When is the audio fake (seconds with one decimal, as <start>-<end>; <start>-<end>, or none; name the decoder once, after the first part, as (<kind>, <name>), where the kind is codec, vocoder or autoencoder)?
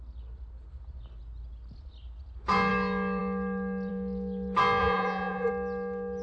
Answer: 4.8-5.5 (vocoder, Vocos)